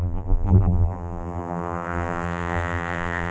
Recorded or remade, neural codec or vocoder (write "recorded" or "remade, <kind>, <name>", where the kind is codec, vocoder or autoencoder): remade, vocoder, BigVGAN v2